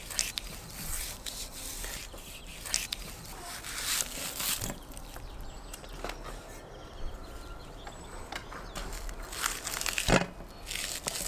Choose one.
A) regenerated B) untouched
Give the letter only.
B